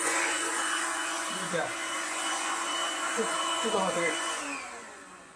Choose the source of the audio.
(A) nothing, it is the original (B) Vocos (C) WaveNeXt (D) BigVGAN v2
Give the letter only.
B